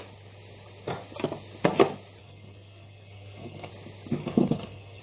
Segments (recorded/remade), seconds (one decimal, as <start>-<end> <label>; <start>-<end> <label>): 0.0-2.2 recorded; 2.2-3.7 remade; 3.7-4.2 recorded; 4.2-5.0 remade